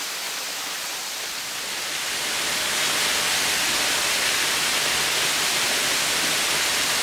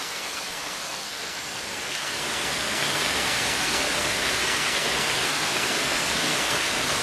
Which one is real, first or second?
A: first